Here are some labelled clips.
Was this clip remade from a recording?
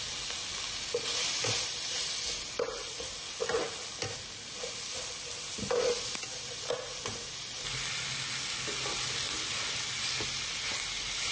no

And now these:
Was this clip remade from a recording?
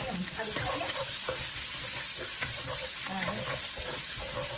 no